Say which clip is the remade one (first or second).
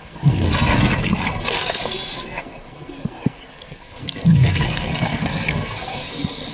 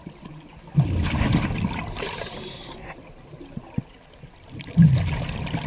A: first